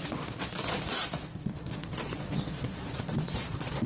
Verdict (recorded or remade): remade